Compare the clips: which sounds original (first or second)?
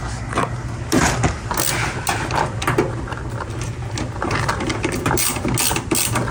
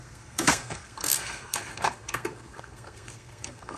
first